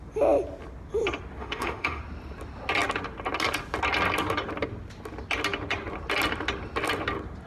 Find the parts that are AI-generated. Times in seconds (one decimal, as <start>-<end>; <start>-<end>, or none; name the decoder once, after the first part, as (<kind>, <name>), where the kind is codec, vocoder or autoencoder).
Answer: 1.4-2.0 (autoencoder, DAC-VAE)